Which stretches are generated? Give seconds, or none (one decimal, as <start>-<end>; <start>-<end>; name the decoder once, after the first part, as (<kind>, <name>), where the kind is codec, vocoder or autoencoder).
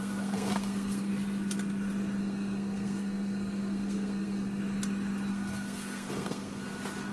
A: 0.0-1.1 (codec, SNAC); 2.2-4.6; 5.3-6.6